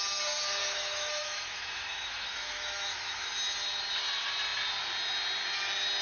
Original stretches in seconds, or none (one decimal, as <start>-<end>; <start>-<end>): 0.0-0.6; 3.3-6.0